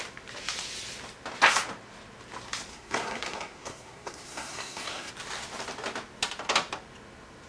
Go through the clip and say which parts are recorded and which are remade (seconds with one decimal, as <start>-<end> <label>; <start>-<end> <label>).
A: 0.0-2.7 recorded; 2.7-5.1 remade; 5.1-7.5 recorded